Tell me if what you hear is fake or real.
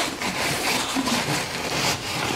fake